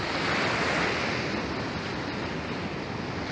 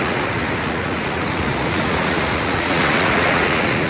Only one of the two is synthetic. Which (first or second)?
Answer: second